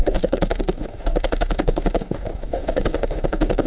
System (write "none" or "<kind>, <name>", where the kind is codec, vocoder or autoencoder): codec, DAC